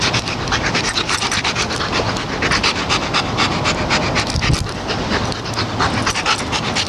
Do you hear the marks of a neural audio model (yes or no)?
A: no